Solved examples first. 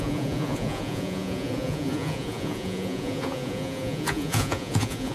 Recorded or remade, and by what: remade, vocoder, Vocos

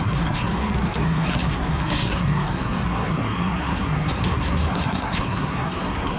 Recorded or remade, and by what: remade, codec, SNAC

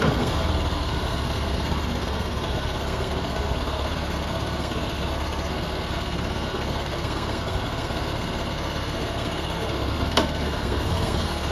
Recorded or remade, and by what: remade, codec, SNAC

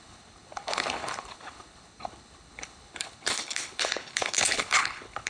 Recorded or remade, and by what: remade, codec, HILCodec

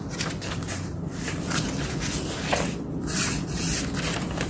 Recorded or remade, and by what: recorded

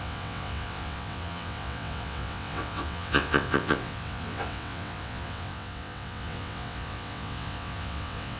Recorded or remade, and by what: remade, vocoder, WaveNeXt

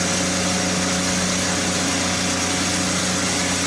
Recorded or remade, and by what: recorded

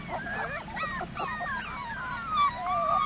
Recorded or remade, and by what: recorded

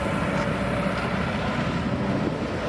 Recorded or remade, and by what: recorded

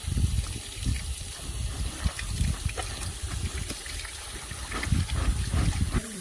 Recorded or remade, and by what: recorded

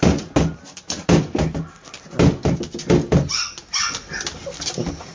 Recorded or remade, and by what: recorded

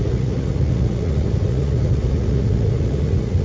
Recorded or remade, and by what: remade, vocoder, Vocos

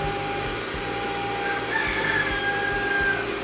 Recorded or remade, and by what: recorded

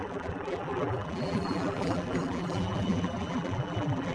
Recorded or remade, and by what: remade, vocoder, BigVGAN v2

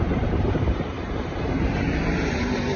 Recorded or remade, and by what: remade, vocoder, BigVGAN v2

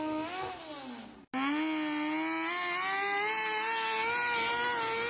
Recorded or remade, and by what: recorded